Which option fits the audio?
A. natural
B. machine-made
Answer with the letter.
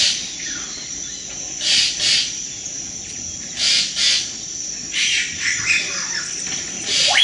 A